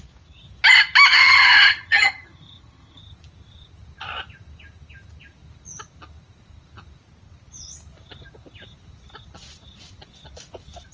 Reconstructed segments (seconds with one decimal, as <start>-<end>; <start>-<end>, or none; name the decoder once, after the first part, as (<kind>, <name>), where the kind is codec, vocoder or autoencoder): 1.1-3.0 (vocoder, HiFi-GAN)